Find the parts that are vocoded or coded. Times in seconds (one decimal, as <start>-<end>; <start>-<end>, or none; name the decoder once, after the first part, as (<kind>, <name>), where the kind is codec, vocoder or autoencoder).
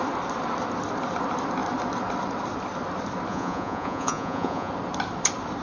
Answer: 3.3-4.7 (vocoder, Vocos)